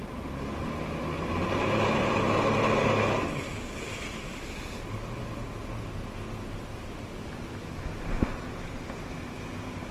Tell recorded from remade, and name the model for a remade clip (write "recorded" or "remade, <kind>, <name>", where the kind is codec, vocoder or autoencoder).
recorded